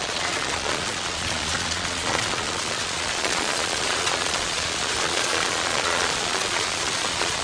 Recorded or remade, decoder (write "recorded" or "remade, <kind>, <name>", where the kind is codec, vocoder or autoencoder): remade, vocoder, Vocos